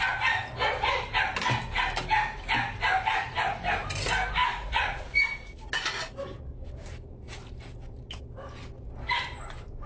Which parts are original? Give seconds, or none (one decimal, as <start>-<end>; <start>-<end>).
0.0-4.4; 5.7-9.9